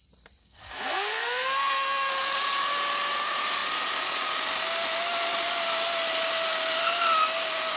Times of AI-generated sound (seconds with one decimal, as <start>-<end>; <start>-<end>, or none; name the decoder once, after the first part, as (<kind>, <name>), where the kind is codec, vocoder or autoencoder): 0.4-2.1 (codec, SNAC)